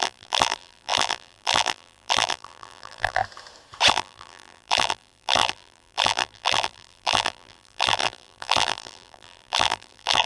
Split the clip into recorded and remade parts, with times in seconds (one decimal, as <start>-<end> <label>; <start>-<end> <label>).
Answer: 0.0-3.2 remade; 3.2-3.9 recorded; 3.9-10.3 remade